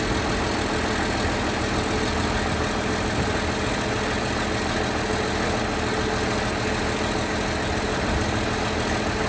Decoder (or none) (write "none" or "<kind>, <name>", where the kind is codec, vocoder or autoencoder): none